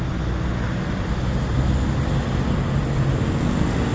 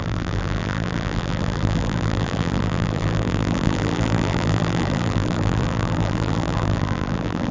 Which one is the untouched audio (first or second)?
first